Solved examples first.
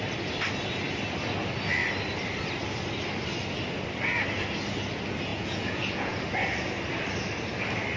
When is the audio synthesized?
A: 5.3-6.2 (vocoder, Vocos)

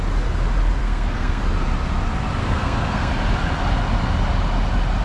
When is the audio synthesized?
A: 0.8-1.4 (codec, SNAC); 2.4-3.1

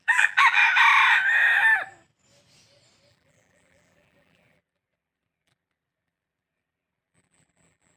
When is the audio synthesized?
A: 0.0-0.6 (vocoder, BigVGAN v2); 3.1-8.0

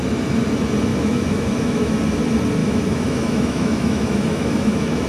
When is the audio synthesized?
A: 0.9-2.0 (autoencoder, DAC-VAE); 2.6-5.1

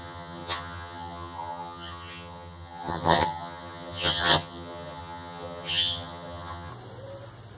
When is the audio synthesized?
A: 0.0-6.7 (vocoder, HiFi-GAN)

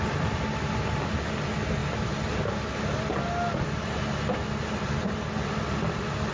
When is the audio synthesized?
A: none

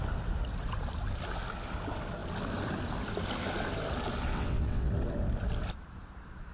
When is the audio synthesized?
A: 4.3-4.9 (vocoder, WaveNeXt)